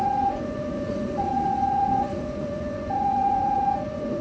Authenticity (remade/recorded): remade